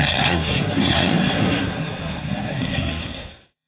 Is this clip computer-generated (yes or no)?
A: yes